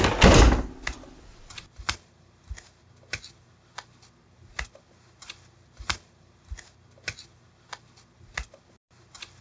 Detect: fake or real real